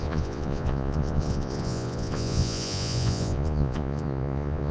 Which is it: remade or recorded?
remade